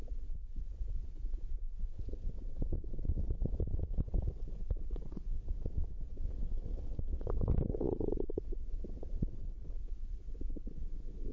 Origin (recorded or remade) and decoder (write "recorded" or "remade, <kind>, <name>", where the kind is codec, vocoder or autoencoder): remade, vocoder, WaveNeXt